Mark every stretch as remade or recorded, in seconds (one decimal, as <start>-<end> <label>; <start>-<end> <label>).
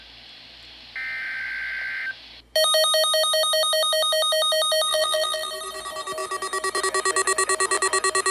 0.0-4.9 recorded; 4.9-5.5 remade; 5.5-8.3 recorded